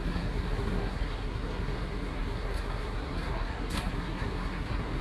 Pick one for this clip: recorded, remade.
remade